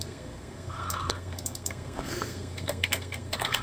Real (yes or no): no